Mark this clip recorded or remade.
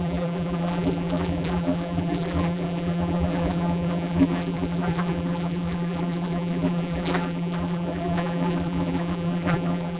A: remade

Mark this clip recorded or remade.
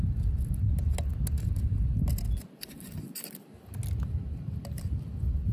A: recorded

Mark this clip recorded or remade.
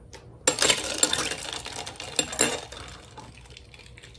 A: recorded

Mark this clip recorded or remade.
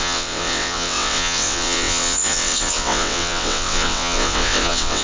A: remade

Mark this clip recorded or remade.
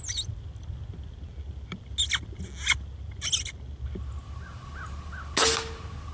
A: recorded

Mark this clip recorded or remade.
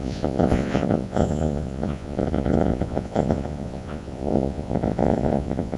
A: remade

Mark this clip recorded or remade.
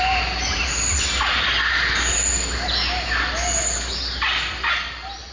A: recorded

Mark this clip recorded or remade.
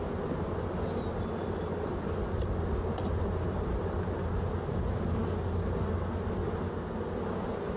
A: recorded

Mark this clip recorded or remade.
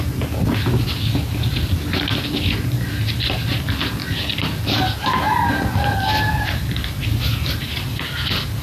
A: recorded